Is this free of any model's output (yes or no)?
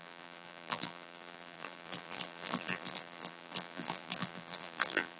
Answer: no